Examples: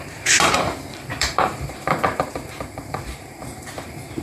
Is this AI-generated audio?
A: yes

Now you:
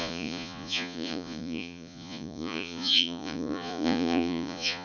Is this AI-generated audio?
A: yes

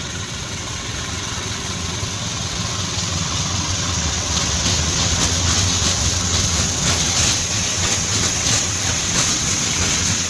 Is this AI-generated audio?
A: yes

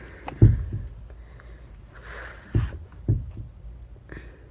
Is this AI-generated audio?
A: no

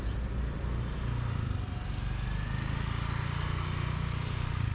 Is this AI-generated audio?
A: no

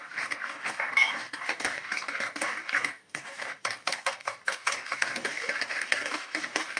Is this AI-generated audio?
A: yes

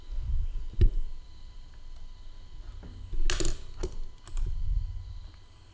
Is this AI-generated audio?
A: no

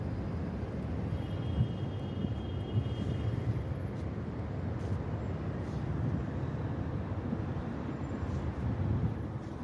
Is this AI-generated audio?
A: no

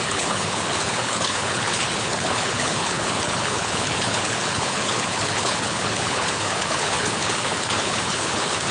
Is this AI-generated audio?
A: yes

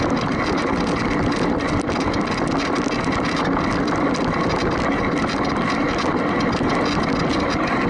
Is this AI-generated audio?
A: no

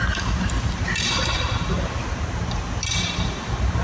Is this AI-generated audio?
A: no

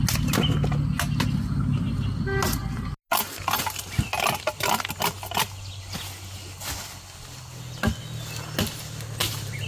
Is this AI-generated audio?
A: no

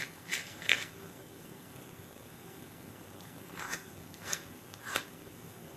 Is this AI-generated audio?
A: yes